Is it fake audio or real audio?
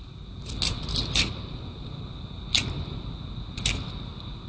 real